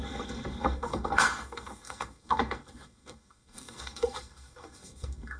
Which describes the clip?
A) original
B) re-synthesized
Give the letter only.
B